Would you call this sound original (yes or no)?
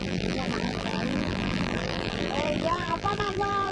no